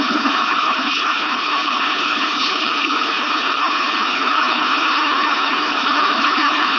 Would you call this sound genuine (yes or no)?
no